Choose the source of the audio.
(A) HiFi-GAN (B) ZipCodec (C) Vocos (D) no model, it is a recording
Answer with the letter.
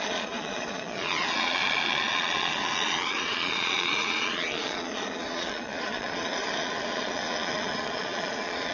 C